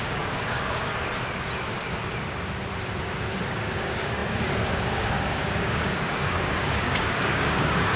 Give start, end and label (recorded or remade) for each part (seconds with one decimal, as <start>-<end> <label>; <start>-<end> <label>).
0.0-0.9 remade; 0.9-3.5 recorded; 3.5-8.0 remade